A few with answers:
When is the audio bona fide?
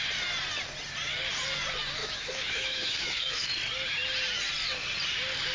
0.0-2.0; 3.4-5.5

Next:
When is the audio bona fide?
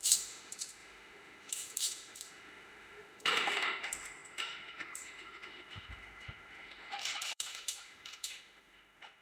none